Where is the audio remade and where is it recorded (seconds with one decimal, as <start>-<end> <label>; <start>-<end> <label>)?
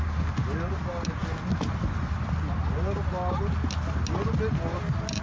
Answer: 0.0-5.2 recorded